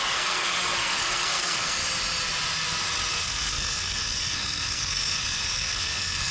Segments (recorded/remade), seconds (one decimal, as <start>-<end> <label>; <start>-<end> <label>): 0.0-1.8 remade; 1.8-3.1 recorded; 3.1-6.3 remade